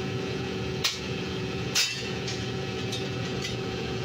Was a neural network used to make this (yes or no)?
yes